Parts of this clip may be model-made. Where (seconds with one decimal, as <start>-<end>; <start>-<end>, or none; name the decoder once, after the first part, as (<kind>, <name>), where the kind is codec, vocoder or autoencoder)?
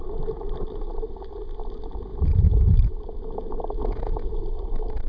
2.1-2.7 (vocoder, Vocos); 3.8-4.4